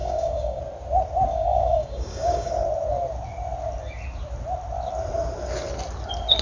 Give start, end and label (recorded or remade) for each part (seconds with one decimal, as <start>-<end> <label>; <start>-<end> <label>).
0.0-0.6 remade; 0.6-1.3 recorded; 1.3-2.5 remade; 2.5-6.4 recorded